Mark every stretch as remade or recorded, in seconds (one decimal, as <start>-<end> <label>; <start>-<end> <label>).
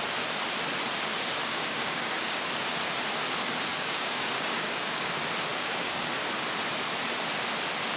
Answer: 0.0-1.4 recorded; 1.4-2.4 remade; 2.4-3.7 recorded; 3.7-5.1 remade; 5.1-5.5 recorded; 5.5-6.1 remade; 6.1-8.0 recorded